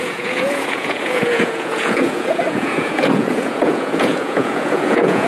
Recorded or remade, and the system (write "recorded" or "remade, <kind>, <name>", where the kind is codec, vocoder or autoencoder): remade, vocoder, Vocos